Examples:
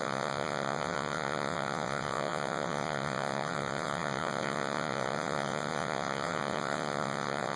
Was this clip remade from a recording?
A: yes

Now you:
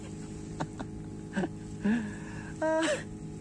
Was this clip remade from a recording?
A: no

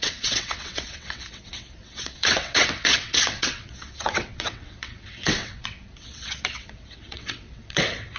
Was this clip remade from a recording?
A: yes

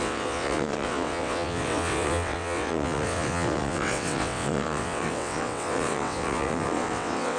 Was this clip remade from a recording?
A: yes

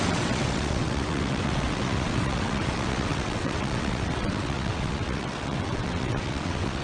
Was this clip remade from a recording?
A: yes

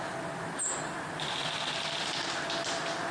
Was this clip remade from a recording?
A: no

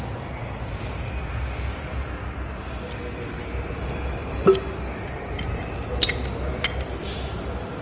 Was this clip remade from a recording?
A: no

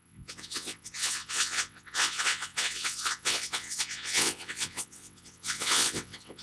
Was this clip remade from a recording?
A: yes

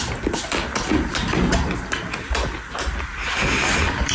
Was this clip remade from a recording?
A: no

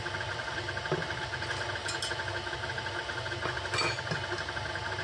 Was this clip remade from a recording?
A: no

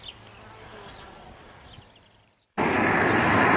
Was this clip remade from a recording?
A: no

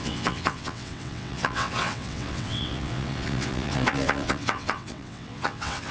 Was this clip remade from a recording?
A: yes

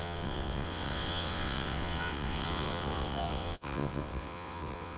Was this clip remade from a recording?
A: yes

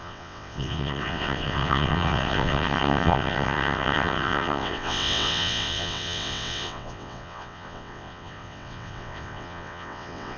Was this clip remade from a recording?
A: yes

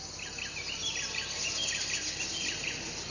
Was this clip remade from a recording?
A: no